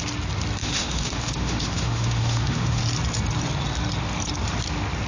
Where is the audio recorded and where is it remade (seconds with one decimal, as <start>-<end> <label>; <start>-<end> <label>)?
0.0-0.6 recorded; 0.6-2.8 remade; 2.8-5.1 recorded